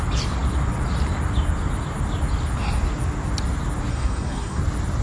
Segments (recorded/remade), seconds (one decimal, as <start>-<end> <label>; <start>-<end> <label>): 0.0-3.9 recorded; 3.9-4.6 remade; 4.6-5.0 recorded